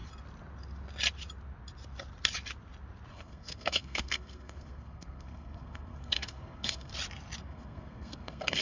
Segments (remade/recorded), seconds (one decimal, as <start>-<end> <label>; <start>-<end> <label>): 0.0-3.1 recorded; 3.1-6.9 remade; 6.9-7.4 recorded; 7.4-8.6 remade